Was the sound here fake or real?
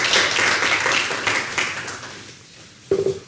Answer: real